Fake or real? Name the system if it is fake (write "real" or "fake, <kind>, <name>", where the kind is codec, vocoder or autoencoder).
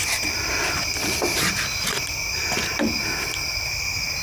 real